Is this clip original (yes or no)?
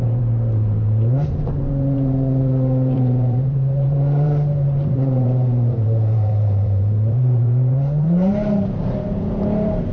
no